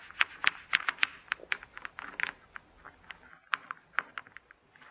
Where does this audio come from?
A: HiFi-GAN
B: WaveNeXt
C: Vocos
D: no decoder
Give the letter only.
D